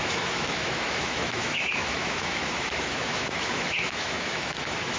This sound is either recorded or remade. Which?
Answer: remade